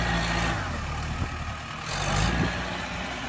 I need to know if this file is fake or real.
real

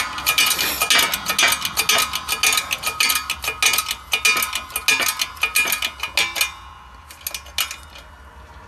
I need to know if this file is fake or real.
real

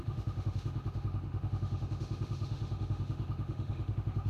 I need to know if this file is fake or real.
fake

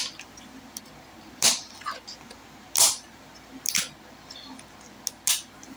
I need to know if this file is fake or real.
real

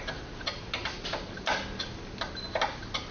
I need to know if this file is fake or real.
real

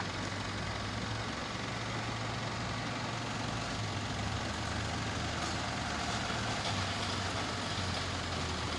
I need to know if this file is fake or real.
real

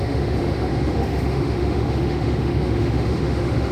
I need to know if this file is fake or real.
fake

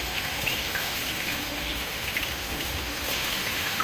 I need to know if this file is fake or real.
fake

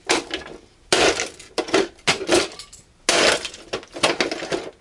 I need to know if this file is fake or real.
real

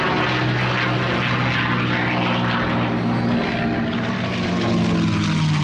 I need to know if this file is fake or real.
real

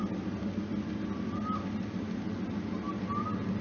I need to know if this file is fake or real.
real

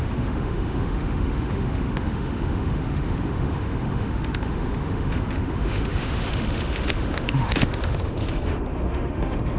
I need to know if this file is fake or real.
fake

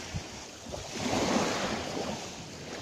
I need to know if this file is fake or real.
real